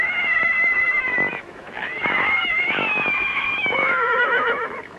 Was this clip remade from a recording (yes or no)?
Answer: yes